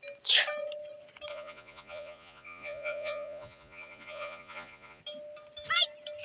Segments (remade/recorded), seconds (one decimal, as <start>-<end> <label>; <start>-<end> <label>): 0.0-1.3 recorded; 1.3-5.0 remade; 5.0-6.2 recorded